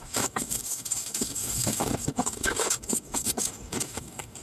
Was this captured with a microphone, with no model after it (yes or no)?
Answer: no